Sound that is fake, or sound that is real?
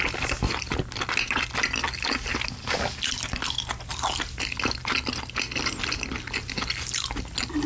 real